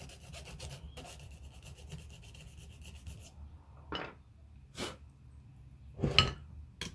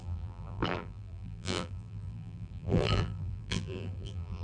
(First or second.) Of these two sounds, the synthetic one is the second